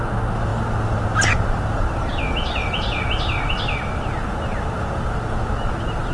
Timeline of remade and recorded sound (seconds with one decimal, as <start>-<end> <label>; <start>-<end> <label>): 0.0-6.1 recorded